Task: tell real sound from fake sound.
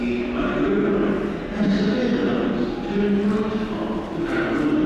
real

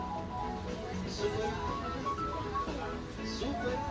real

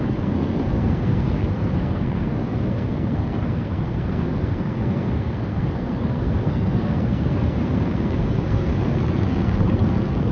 fake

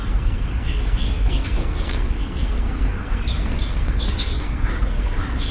fake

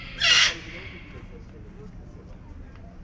real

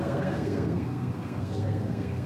fake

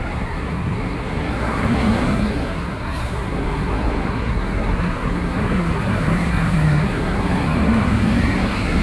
fake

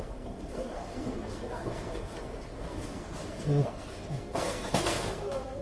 fake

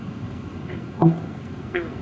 fake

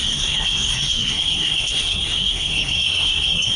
fake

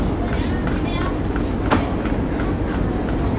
real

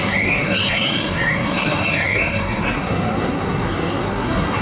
fake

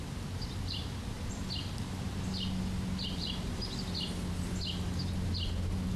real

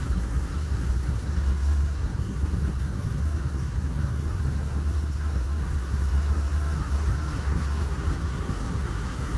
fake